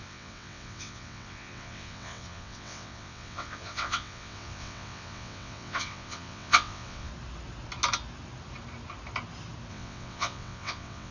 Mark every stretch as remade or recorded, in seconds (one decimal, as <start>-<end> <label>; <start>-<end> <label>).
0.0-7.1 remade; 7.1-9.7 recorded; 9.7-11.1 remade